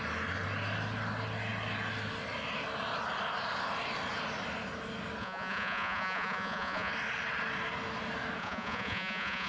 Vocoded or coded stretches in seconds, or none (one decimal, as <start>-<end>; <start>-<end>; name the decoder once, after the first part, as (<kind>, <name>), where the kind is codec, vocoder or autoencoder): 5.2-6.9 (vocoder, Vocos); 8.4-9.5